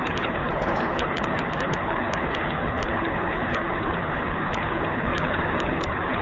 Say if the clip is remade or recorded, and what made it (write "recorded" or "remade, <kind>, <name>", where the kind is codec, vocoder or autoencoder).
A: remade, codec, HILCodec